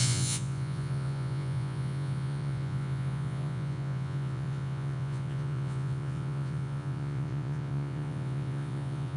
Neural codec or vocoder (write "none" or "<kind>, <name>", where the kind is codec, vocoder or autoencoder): vocoder, Vocos